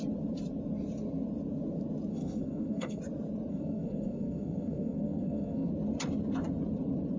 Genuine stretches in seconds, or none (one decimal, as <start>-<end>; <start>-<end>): 0.0-2.1; 3.0-3.5; 5.7-7.2